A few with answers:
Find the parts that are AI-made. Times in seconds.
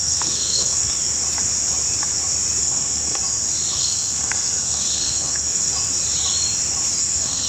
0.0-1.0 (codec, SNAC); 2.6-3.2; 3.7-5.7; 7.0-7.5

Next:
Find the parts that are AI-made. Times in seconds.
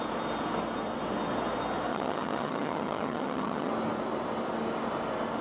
1.9-3.7 (vocoder, HiFi-GAN)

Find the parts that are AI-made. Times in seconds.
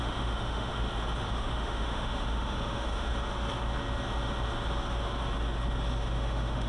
0.0-0.7 (autoencoder, DAC-VAE); 1.3-3.1; 6.0-6.7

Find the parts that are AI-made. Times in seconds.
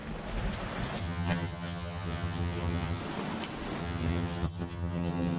1.0-3.0 (vocoder, HiFi-GAN); 3.8-5.4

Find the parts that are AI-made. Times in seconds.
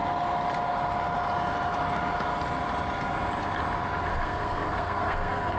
4.1-5.6 (codec, SNAC)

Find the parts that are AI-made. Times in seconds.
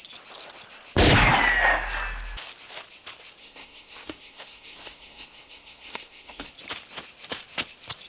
3.4-6.5 (codec, SNAC)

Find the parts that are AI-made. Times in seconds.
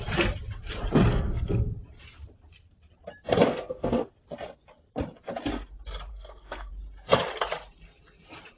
1.1-1.7 (codec, SNAC); 3.5-4.1; 6.1-6.7